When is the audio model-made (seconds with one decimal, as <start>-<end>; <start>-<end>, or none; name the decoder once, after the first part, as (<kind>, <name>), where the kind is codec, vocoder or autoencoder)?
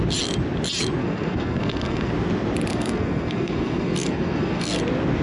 1.0-2.1 (codec, SNAC); 2.7-4.8